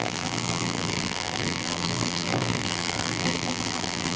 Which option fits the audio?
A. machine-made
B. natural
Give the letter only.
A